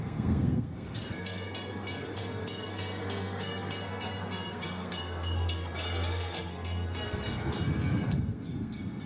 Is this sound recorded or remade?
remade